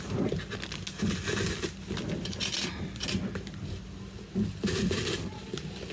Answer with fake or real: real